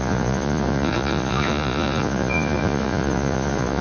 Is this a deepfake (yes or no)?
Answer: yes